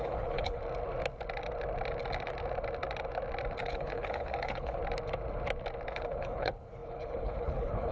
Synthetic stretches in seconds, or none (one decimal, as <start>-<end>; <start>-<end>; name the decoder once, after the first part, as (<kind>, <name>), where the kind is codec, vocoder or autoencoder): 0.0-0.6 (codec, HILCodec); 3.6-4.8; 5.9-7.9